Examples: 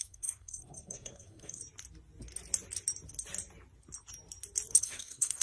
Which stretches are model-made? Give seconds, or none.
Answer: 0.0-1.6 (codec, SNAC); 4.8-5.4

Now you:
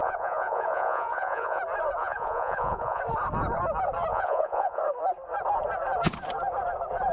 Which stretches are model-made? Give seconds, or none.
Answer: 0.0-1.6 (vocoder, Vocos); 2.0-3.0; 4.1-4.8

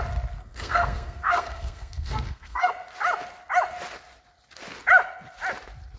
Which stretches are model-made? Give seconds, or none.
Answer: 0.4-2.7 (codec, SNAC)

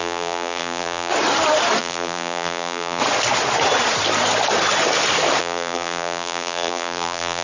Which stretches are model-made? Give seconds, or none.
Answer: 0.0-1.1 (vocoder, BigVGAN v2); 1.8-3.0; 5.4-7.4